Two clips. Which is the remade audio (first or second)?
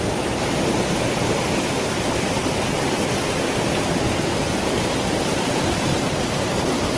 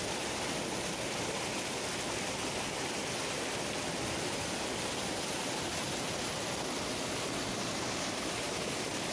first